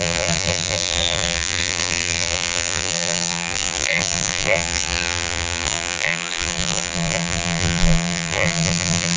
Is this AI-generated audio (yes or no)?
yes